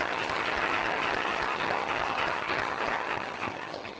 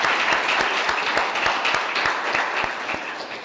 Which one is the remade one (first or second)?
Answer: first